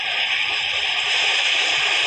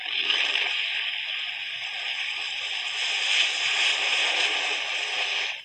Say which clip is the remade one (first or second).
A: first